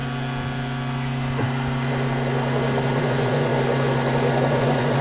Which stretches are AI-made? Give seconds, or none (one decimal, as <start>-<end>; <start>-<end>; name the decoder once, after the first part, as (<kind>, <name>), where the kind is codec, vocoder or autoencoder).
3.0-3.5 (vocoder, Vocos); 4.5-5.0